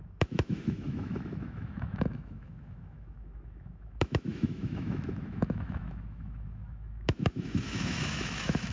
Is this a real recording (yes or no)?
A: no